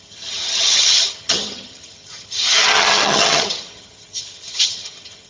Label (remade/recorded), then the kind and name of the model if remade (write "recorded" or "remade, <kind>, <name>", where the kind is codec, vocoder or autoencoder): remade, vocoder, HiFi-GAN